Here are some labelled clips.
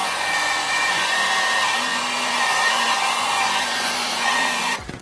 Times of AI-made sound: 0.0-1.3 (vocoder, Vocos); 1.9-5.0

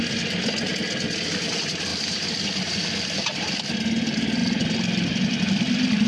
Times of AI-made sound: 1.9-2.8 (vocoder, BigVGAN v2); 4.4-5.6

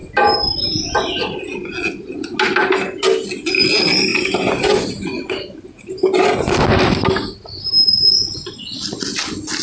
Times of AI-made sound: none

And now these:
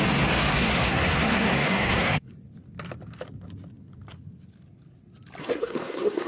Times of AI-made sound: 0.5-2.3 (codec, SNAC); 5.4-6.3

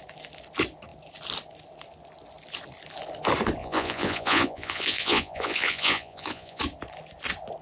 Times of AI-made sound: 3.6-6.6 (vocoder, Vocos)